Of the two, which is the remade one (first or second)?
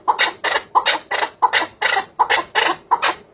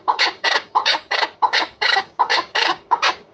second